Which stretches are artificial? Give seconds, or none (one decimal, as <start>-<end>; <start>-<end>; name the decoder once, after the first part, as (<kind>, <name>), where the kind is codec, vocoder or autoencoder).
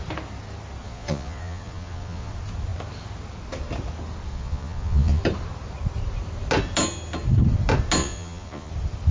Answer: 0.8-2.3 (vocoder, Vocos); 4.3-5.2; 8.0-8.7